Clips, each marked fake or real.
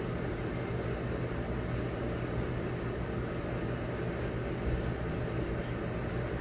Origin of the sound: real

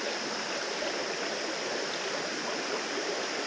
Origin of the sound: real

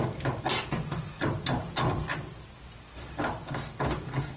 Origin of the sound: real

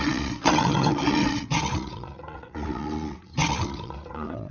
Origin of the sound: fake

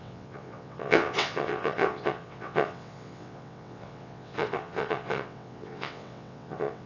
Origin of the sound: fake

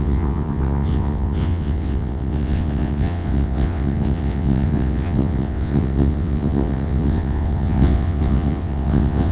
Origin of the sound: fake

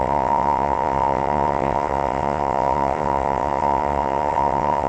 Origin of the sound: fake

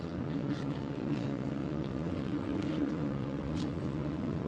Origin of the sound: fake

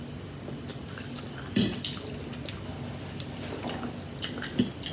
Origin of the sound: real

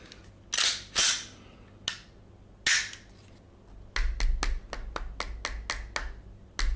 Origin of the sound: real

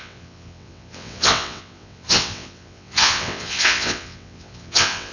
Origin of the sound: fake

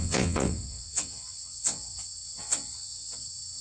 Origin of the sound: fake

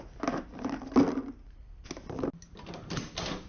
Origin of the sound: real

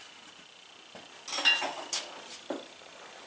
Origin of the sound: real